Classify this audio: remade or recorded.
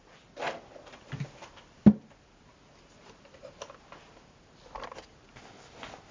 recorded